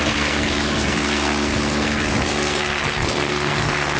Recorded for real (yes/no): no